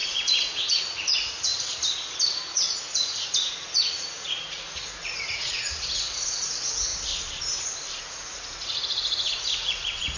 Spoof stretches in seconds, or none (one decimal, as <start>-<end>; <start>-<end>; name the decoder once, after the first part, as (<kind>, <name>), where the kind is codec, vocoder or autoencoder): 0.0-1.5 (vocoder, Vocos); 2.5-6.9; 8.0-10.2